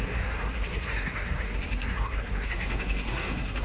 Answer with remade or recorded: remade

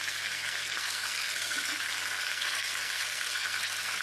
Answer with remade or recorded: remade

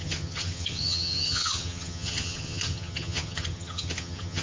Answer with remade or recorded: remade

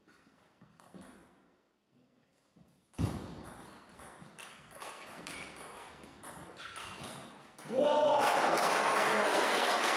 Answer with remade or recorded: remade